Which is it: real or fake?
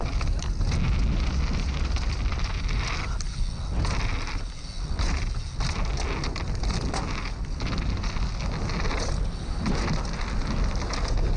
real